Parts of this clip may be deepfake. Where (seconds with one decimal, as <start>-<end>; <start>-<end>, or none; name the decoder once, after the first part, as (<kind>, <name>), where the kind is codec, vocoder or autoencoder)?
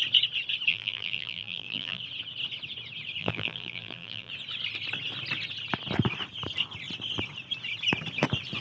0.7-2.0 (vocoder, BigVGAN v2); 3.2-4.3